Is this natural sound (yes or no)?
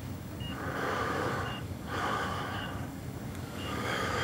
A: no